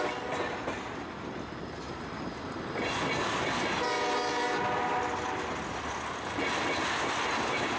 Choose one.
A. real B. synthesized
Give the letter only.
A